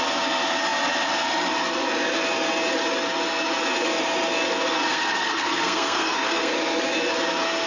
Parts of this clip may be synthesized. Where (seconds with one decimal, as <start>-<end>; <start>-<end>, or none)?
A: 4.9-6.5